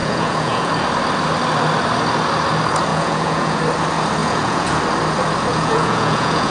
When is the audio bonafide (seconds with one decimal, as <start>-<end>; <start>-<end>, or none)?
0.7-2.9; 3.6-4.2; 4.8-5.5

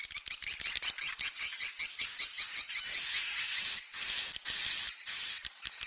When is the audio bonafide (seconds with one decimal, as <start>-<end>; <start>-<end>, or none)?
0.0-5.9